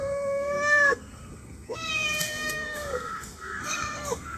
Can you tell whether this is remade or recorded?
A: remade